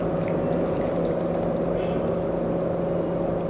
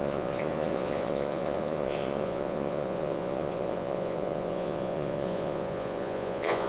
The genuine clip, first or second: first